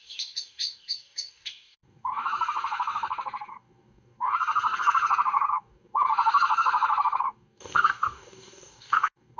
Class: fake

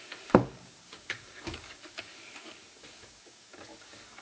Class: fake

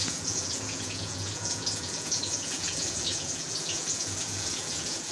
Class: fake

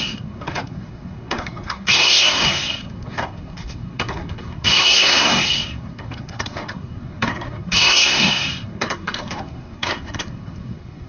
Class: fake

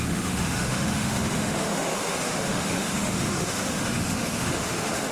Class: fake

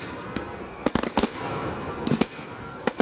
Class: fake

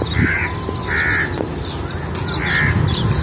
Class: real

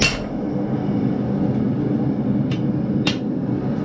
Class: real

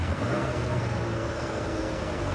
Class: fake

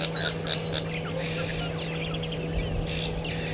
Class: real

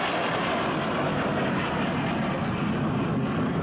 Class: real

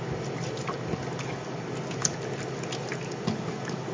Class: real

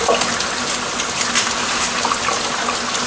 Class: real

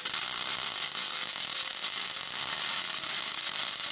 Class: real